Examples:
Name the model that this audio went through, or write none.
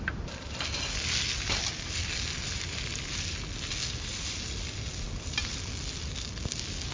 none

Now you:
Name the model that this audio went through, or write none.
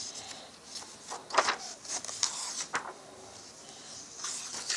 none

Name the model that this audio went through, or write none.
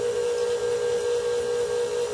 none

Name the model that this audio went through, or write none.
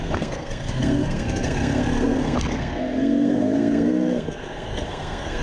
codec, SNAC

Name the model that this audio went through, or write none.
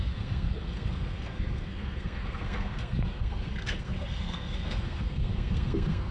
codec, SNAC